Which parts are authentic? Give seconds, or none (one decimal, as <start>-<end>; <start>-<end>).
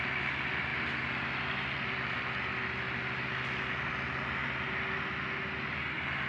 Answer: 0.0-6.3